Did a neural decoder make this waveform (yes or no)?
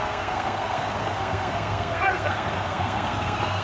yes